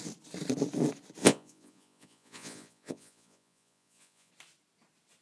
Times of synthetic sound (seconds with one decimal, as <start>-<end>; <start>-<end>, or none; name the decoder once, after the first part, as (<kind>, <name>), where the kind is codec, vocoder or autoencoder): 1.2-4.3 (vocoder, Vocos)